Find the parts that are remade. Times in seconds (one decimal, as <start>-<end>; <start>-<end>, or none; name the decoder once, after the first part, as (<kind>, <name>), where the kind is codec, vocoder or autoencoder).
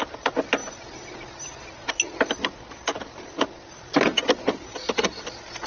none